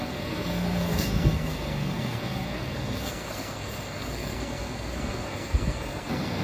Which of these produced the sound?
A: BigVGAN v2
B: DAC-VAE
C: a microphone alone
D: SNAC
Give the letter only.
D